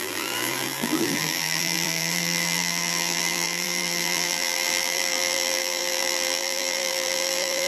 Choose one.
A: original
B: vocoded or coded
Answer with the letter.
B